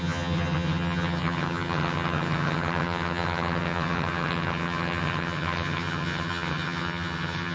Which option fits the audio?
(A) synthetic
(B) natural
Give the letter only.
A